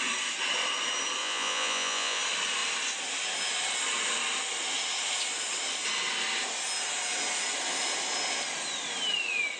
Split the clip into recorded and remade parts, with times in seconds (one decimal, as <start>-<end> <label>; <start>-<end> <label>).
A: 0.0-1.2 recorded; 1.2-2.2 remade; 2.2-9.6 recorded

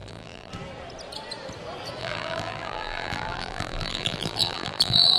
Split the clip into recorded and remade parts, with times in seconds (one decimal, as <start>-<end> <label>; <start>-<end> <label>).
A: 0.0-0.5 remade; 0.5-2.0 recorded; 2.0-5.2 remade

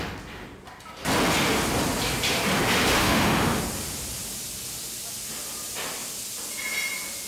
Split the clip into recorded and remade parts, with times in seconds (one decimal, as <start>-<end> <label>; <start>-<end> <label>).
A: 0.0-3.0 recorded; 3.0-3.6 remade; 3.6-7.3 recorded

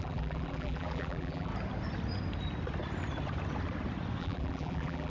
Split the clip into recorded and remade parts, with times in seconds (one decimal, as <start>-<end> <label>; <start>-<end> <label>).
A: 0.0-1.5 remade; 1.5-4.2 recorded; 4.2-5.1 remade

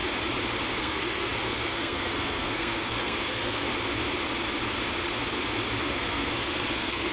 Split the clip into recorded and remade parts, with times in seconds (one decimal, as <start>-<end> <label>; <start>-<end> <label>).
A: 0.0-0.8 recorded; 0.8-3.7 remade; 3.7-5.8 recorded; 5.8-7.1 remade

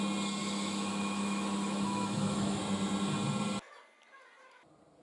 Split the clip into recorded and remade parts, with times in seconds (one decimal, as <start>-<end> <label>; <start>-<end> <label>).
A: 0.0-0.4 recorded; 0.4-2.6 remade; 2.6-5.0 recorded

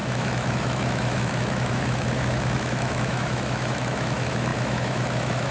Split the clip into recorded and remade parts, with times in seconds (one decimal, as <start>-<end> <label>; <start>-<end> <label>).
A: 0.0-5.5 remade

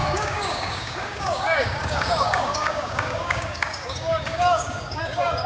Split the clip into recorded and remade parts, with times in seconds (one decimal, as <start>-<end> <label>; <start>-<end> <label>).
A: 0.0-5.5 remade